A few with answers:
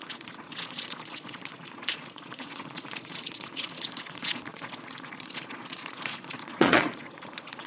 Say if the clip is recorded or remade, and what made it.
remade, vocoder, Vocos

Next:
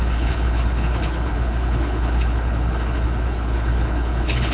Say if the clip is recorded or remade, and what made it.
remade, codec, HILCodec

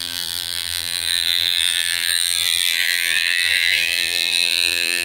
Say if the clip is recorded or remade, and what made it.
remade, vocoder, BigVGAN v2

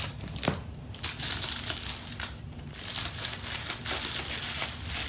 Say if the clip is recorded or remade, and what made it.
recorded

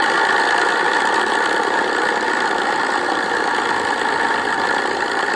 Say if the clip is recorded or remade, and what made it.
recorded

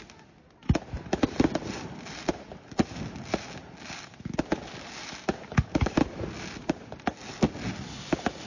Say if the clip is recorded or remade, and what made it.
recorded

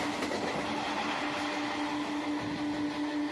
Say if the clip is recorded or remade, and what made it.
recorded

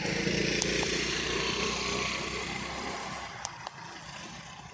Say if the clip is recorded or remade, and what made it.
remade, vocoder, BigVGAN v2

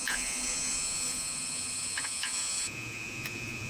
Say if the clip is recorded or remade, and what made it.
remade, vocoder, Vocos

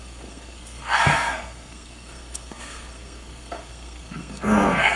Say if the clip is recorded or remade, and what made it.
remade, codec, SNAC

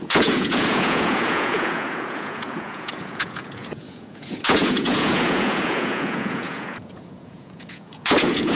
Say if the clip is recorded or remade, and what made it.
remade, vocoder, Vocos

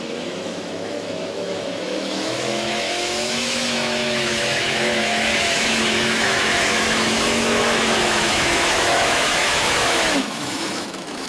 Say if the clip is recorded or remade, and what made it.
remade, autoencoder, DAC-VAE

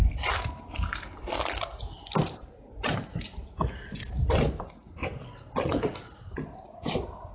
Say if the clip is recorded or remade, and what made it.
recorded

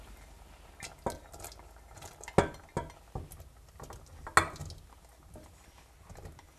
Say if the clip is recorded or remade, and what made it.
recorded